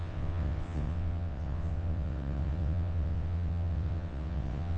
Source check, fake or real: fake